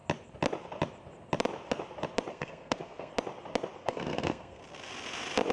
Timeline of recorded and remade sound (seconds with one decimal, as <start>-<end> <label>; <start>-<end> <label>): 0.0-2.3 recorded; 2.3-3.1 remade; 3.1-3.8 recorded; 3.8-4.6 remade; 4.6-5.5 recorded